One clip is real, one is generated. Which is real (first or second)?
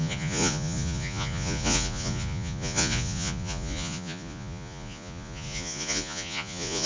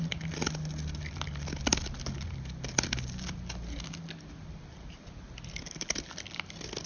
second